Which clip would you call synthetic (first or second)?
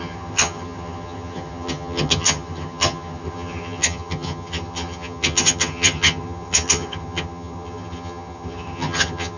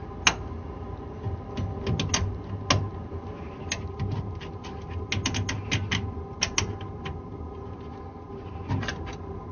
first